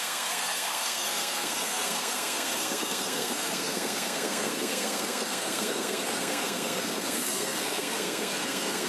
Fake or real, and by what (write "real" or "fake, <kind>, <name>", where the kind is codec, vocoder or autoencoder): fake, codec, SNAC